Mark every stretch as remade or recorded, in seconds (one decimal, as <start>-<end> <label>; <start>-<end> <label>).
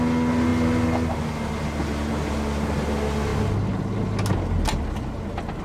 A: 0.0-5.6 recorded